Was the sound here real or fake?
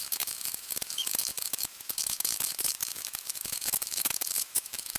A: fake